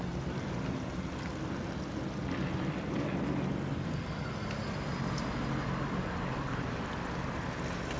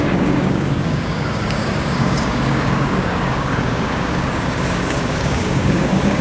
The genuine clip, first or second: first